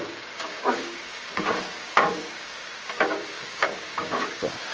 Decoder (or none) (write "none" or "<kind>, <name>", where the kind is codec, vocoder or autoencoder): codec, DAC